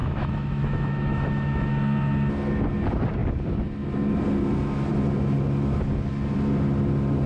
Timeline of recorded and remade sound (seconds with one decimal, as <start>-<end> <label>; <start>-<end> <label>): 0.0-1.7 remade; 1.7-7.3 recorded

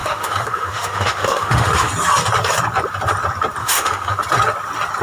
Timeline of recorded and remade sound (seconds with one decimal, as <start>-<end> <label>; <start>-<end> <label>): 0.0-1.9 remade; 1.9-3.6 recorded; 3.6-4.2 remade; 4.2-5.0 recorded

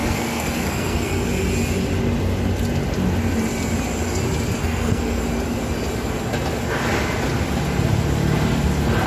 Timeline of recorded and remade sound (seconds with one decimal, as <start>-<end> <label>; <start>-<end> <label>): 0.0-1.3 remade; 1.3-4.6 recorded; 4.6-5.2 remade; 5.2-9.1 recorded

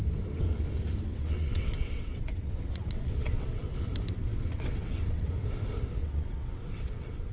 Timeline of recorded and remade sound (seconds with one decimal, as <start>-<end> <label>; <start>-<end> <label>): 0.0-1.1 recorded; 1.1-3.9 remade; 3.9-4.3 recorded; 4.3-5.3 remade; 5.3-6.0 recorded; 6.0-7.3 remade

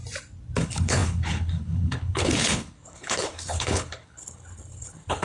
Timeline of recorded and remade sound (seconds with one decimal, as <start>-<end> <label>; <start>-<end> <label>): 0.0-0.6 recorded; 0.6-5.2 remade

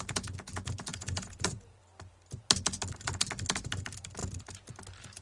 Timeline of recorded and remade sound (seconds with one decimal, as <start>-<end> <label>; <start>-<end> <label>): 0.0-0.9 recorded; 0.9-1.8 remade; 1.8-5.2 recorded